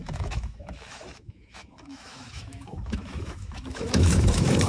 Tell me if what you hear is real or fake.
fake